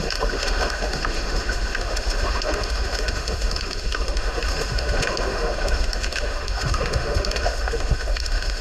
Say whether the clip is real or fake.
fake